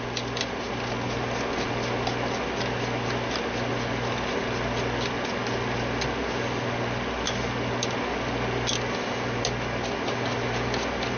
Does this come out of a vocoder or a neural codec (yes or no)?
no